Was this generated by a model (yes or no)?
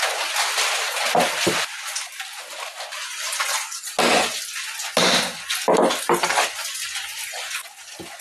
no